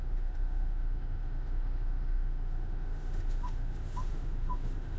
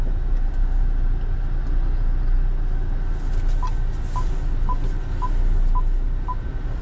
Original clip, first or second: second